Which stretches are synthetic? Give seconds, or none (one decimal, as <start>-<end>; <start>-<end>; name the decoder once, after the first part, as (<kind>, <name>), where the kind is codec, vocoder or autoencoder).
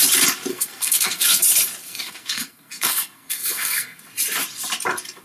0.5-1.4 (codec, SNAC); 1.8-4.0